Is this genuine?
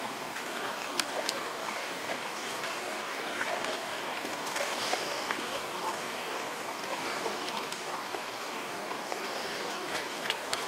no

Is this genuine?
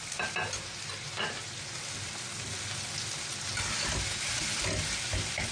yes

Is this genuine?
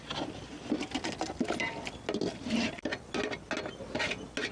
yes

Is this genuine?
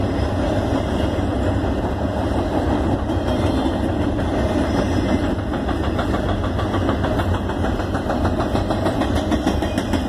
yes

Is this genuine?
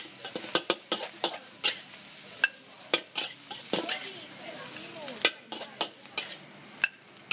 yes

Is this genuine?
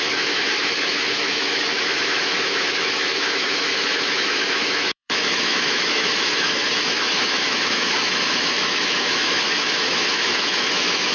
no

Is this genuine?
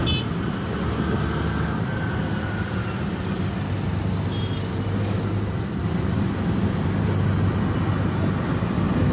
yes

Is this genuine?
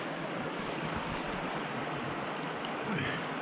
yes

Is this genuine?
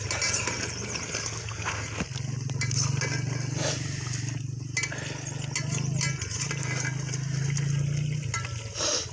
yes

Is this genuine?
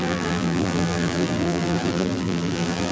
no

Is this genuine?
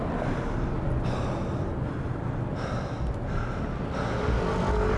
yes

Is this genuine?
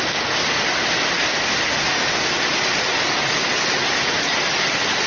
yes